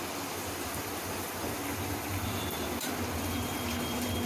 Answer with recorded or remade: remade